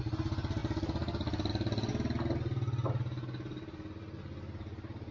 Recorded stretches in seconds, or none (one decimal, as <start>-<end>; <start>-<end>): 0.0-5.1